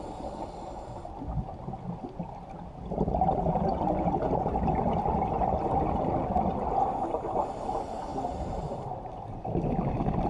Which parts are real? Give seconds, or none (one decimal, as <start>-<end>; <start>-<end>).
0.0-10.3